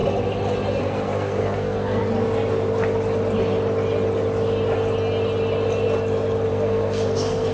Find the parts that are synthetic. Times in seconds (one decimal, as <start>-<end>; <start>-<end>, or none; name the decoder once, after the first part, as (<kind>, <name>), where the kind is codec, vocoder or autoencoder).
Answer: 0.8-2.0 (codec, SNAC); 6.5-7.5